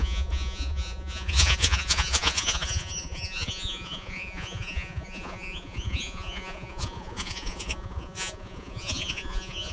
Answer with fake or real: fake